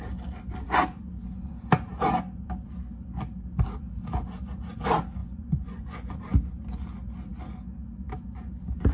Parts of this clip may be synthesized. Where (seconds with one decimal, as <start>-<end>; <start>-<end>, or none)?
5.2-6.1